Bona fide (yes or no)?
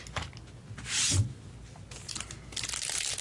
yes